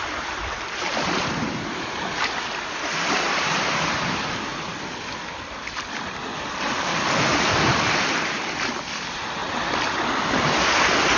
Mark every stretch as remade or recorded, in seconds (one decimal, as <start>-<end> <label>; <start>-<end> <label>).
0.0-4.5 remade; 4.5-6.2 recorded; 6.2-9.4 remade; 9.4-10.4 recorded; 10.4-11.2 remade